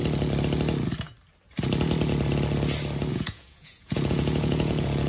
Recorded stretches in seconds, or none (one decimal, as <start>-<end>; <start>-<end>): 0.0-3.1